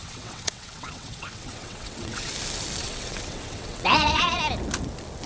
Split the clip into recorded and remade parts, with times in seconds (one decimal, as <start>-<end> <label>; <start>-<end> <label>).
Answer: 0.0-2.3 remade; 2.3-2.8 recorded; 2.8-4.4 remade; 4.4-5.3 recorded